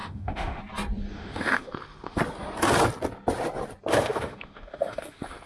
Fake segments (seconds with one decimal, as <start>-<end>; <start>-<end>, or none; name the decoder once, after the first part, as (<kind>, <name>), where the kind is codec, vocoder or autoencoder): 0.0-0.6 (autoencoder, DAC-VAE); 1.1-2.2; 3.9-5.5